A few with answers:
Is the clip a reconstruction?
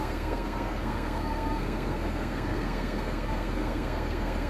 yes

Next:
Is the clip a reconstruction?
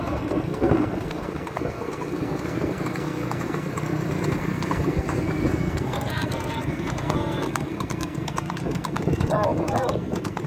yes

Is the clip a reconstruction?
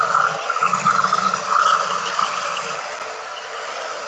no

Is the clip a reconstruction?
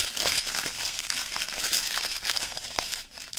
yes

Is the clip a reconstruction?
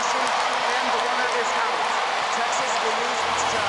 no